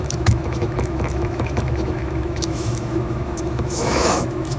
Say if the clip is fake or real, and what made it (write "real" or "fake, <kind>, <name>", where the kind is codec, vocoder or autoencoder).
fake, autoencoder, DAC-VAE